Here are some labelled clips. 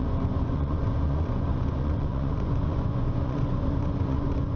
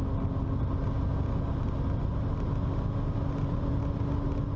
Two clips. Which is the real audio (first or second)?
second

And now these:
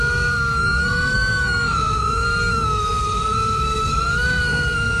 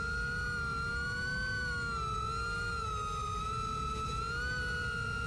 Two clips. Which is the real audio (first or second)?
second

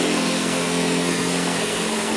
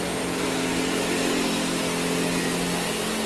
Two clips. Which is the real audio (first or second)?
second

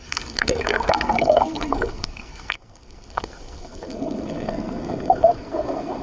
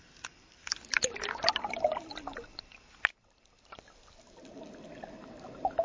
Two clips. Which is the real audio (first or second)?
second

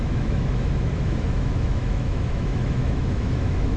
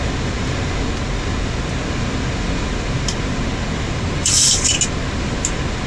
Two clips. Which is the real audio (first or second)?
second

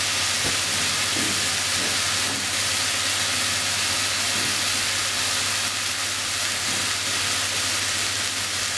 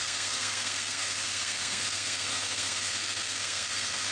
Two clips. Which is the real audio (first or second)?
first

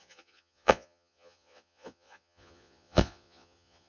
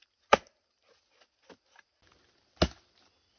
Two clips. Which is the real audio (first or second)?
second